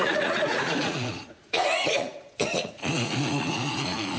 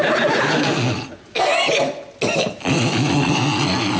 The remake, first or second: first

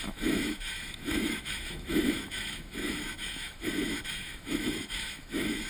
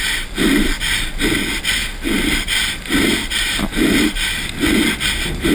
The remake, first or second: first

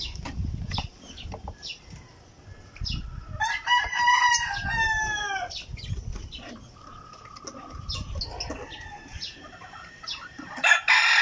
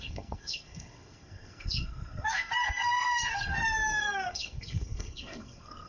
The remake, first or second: second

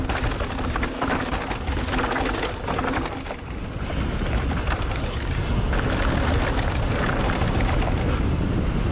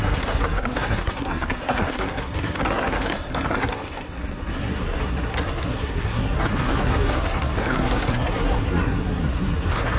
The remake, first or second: second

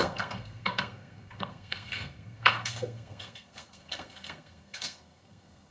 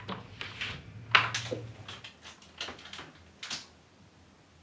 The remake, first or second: first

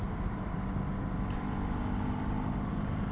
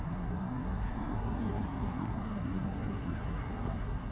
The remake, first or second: second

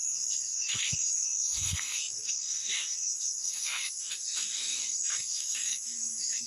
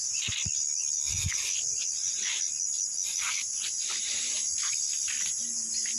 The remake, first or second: first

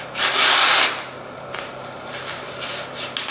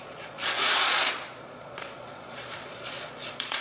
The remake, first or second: second